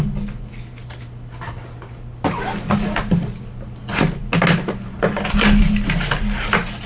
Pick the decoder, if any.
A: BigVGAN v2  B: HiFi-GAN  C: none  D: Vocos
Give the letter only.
C